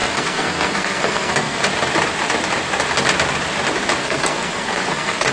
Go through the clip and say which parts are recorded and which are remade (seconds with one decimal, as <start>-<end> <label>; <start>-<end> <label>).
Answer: 0.0-1.6 remade; 1.6-4.0 recorded; 4.0-5.3 remade